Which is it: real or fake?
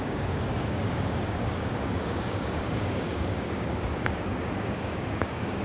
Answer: fake